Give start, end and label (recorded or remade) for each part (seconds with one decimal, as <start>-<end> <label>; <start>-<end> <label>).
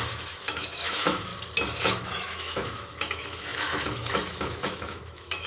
0.0-1.3 remade; 1.3-1.8 recorded; 1.8-5.5 remade